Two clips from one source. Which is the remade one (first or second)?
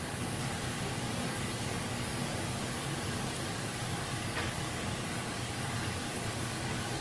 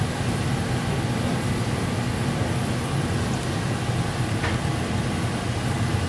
first